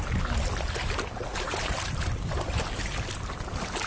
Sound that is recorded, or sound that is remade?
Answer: recorded